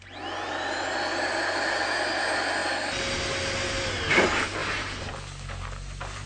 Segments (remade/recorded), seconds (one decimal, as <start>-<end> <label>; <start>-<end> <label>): 0.0-6.3 recorded